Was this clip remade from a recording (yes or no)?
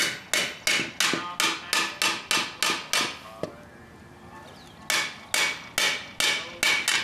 no